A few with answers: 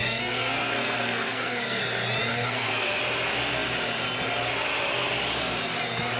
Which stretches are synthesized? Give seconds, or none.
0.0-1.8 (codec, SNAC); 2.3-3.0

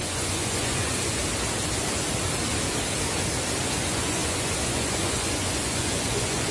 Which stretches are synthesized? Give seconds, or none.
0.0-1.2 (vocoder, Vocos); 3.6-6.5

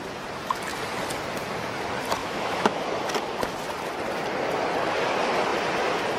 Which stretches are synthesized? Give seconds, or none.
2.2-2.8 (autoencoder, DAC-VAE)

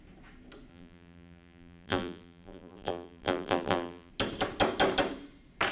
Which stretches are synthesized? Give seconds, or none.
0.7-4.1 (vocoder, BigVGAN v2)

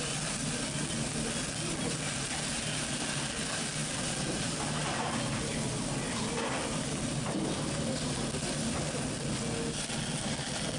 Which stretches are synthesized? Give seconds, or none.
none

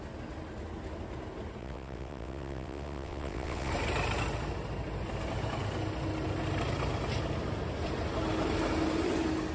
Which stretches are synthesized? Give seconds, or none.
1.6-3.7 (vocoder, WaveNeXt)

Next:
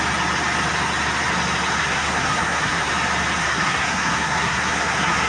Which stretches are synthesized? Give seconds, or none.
1.8-2.9 (codec, SNAC); 3.4-5.3

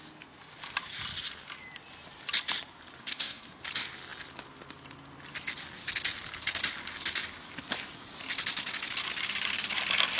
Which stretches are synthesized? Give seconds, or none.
3.0-3.6 (codec, SNAC)